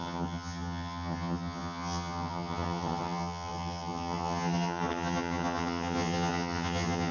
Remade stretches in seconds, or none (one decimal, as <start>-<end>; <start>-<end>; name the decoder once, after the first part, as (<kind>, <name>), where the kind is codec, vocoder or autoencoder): 0.0-7.1 (vocoder, HiFi-GAN)